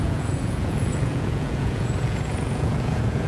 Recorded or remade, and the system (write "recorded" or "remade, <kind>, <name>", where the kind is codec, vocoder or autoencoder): remade, vocoder, Vocos